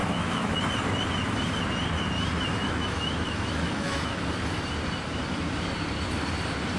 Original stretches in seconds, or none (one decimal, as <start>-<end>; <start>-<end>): 0.6-2.6; 4.2-6.8